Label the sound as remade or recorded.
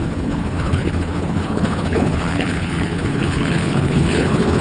remade